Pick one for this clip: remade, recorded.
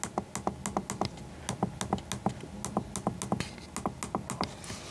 recorded